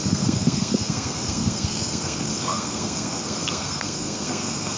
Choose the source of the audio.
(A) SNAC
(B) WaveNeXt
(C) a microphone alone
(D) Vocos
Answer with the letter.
A